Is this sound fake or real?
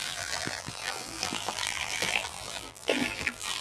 fake